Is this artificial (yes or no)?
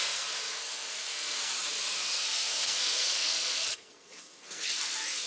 yes